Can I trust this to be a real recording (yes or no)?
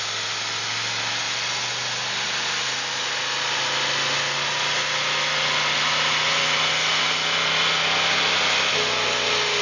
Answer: yes